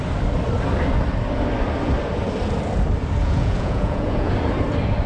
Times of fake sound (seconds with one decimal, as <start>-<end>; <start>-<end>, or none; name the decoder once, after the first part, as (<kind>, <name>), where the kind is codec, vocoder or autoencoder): 3.2-4.3 (vocoder, Vocos)